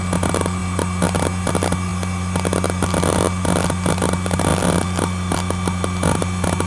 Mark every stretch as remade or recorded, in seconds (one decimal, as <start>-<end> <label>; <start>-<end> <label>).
0.0-6.7 recorded